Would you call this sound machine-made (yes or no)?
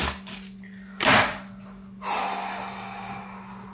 no